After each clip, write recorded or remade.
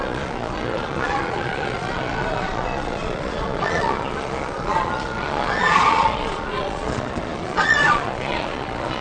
remade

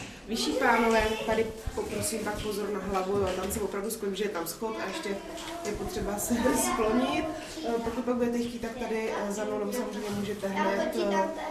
recorded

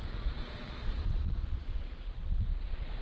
remade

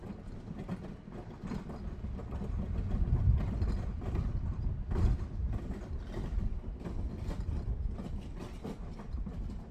recorded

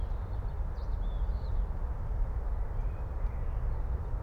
remade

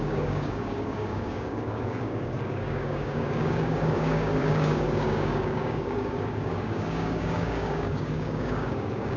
remade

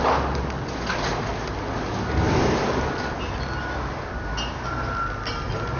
recorded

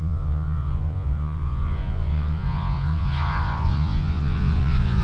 remade